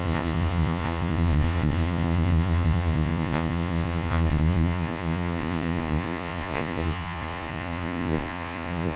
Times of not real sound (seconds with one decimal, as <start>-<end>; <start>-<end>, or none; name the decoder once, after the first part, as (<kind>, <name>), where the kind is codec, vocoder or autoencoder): 0.0-9.0 (vocoder, Vocos)